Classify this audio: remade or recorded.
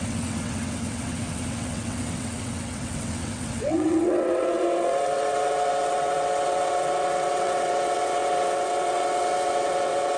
remade